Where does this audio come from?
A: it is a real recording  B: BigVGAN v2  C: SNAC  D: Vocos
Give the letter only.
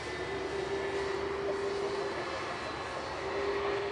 A